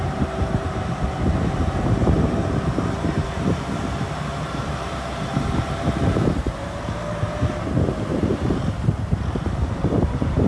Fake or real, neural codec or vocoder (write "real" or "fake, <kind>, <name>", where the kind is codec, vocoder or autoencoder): fake, vocoder, BigVGAN v2